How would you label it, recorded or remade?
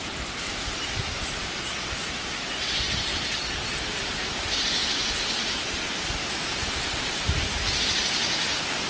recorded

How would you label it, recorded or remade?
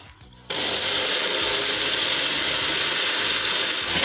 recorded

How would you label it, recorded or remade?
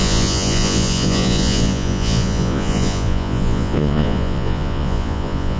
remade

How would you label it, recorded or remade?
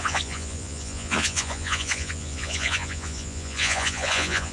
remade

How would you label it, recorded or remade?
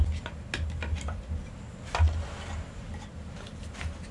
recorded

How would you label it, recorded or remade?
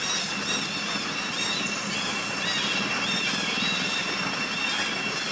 recorded